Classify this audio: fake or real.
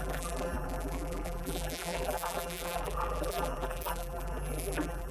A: fake